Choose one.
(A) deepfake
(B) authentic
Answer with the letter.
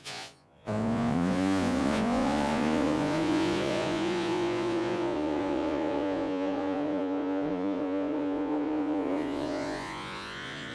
A